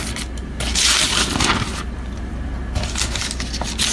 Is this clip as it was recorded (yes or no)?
yes